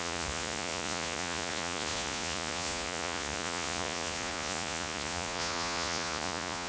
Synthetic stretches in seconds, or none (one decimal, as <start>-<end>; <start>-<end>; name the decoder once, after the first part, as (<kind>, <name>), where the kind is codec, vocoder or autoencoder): 0.0-6.7 (vocoder, Vocos)